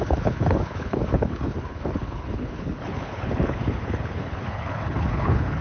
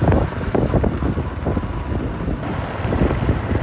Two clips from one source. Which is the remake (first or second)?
first